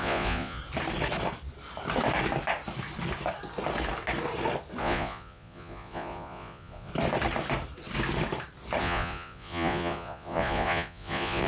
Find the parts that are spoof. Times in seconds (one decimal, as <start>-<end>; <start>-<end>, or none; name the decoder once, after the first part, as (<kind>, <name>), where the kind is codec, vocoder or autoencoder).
0.0-0.6 (vocoder, Vocos); 4.8-6.9; 8.8-11.5